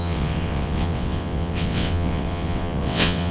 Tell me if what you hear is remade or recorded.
remade